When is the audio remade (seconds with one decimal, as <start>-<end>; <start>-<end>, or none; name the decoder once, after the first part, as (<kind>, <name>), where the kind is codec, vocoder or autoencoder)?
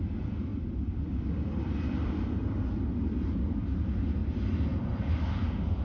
4.2-5.2 (vocoder, BigVGAN v2)